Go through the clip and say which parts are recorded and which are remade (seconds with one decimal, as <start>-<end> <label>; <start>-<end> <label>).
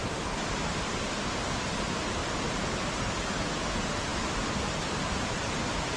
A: 0.0-1.0 remade; 1.0-2.2 recorded; 2.2-2.9 remade; 2.9-6.0 recorded